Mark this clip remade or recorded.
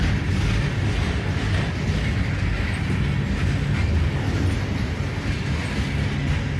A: recorded